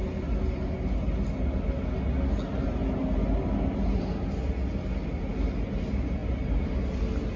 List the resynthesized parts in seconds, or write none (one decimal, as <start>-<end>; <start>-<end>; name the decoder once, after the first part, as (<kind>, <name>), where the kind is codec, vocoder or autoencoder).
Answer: none